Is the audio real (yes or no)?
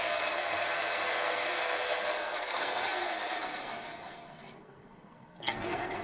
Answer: no